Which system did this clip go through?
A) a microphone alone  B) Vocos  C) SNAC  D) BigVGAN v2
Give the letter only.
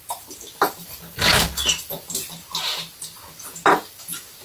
A